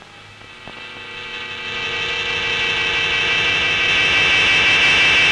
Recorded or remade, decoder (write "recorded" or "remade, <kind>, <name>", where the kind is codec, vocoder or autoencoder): recorded